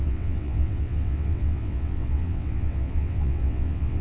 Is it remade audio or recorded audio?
remade